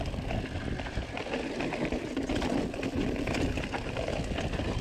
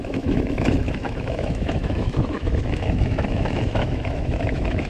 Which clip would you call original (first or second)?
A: first